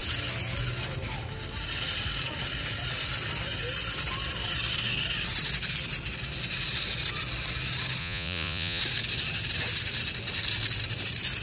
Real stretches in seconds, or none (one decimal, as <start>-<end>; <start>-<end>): 0.0-8.0; 8.8-11.4